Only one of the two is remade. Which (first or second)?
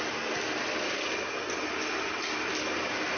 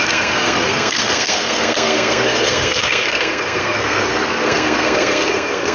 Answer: second